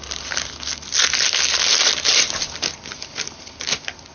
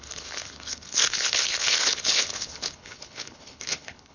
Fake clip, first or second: second